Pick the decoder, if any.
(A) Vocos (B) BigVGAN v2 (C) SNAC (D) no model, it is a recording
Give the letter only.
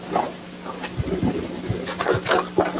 D